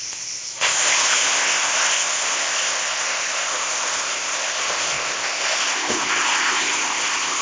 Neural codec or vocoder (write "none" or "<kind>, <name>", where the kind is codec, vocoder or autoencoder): codec, ZipCodec